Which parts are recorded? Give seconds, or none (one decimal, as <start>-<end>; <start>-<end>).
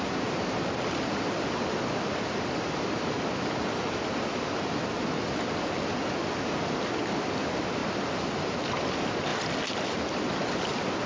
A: 0.0-11.1